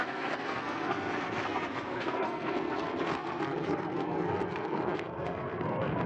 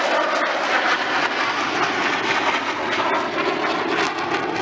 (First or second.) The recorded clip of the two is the second